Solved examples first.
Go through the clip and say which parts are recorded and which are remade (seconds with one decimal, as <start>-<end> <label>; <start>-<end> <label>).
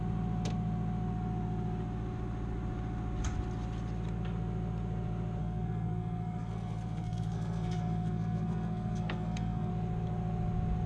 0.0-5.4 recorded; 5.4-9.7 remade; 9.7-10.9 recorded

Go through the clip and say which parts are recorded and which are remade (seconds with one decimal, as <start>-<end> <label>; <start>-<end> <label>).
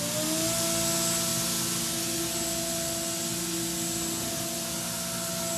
0.0-5.6 recorded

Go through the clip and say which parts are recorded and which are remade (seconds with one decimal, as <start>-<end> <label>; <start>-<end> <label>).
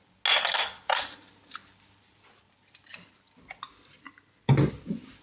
0.0-5.2 recorded